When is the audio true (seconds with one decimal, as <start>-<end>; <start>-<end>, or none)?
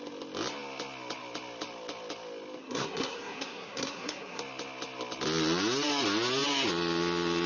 0.0-2.6; 4.4-7.5